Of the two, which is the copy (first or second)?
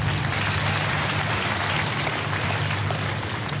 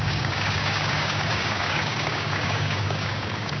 second